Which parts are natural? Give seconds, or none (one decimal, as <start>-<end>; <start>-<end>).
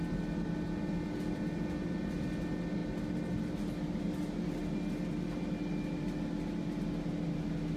0.0-7.8